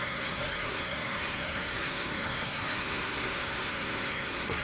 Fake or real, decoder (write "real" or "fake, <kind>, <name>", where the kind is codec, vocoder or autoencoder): fake, codec, SNAC